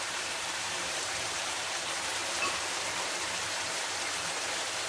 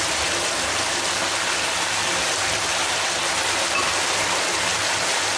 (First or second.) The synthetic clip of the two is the first